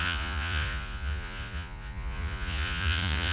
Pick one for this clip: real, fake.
fake